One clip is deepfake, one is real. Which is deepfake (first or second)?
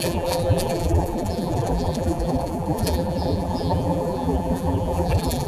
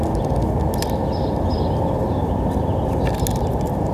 first